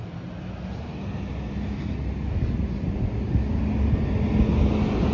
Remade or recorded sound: recorded